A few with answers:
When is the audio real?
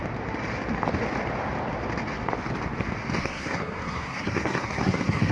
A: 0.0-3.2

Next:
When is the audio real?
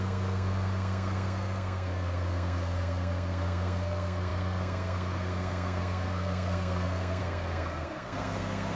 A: none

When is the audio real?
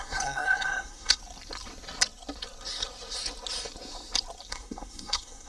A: 1.2-4.5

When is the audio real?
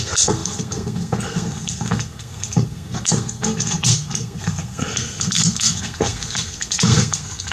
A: none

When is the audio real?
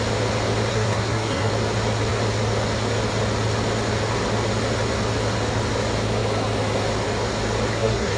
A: 0.0-0.7; 1.5-7.7